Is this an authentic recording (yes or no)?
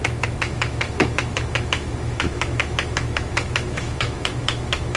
no